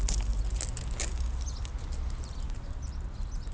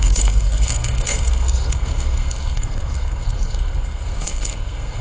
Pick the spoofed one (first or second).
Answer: second